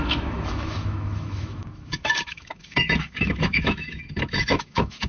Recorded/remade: remade